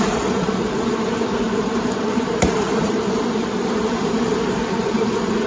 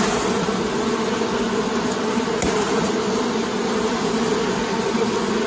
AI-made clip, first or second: first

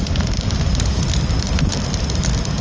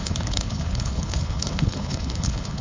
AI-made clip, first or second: second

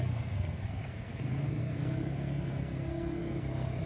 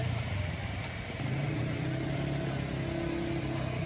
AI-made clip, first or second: first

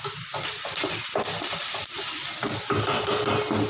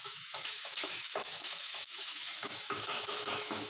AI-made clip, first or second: second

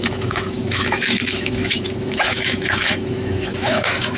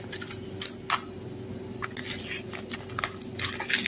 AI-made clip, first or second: first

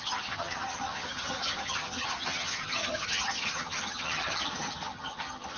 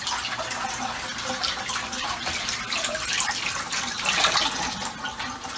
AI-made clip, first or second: first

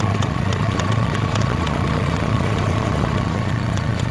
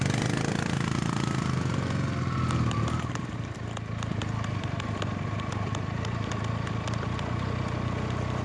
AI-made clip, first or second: first